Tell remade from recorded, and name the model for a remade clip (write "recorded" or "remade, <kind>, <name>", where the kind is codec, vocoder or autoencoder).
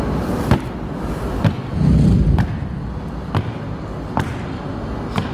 recorded